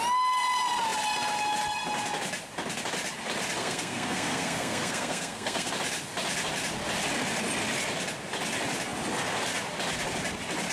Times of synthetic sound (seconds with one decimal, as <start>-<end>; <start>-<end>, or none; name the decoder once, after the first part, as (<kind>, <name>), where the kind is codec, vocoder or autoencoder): 3.6-5.7 (codec, SNAC)